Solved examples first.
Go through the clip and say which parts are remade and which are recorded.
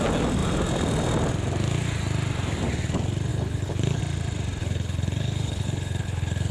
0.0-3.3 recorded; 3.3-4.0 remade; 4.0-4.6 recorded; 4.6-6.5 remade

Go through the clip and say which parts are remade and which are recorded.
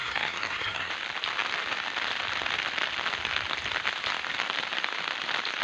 0.0-0.9 remade; 0.9-5.6 recorded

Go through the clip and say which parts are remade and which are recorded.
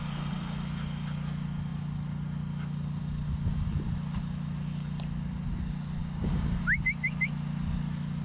0.0-6.0 recorded; 6.0-6.6 remade; 6.6-8.2 recorded